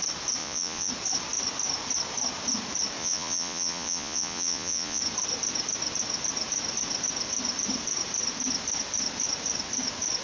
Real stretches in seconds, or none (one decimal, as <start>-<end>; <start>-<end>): 0.0-0.4; 0.9-3.0; 5.0-10.2